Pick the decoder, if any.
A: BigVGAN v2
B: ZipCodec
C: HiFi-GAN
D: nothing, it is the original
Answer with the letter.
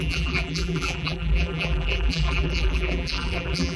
A